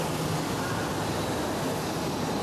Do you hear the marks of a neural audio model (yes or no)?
no